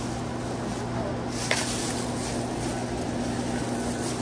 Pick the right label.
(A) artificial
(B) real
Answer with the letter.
B